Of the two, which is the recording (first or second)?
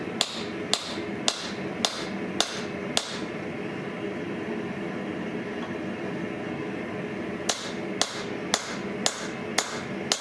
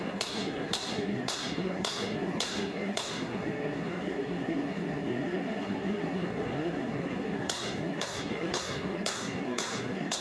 first